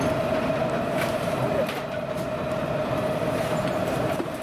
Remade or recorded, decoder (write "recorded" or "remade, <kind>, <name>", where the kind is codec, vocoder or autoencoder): recorded